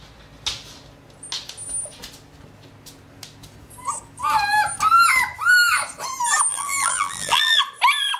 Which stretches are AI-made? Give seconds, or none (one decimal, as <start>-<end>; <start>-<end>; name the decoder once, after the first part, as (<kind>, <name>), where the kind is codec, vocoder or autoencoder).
6.5-7.6 (vocoder, BigVGAN v2)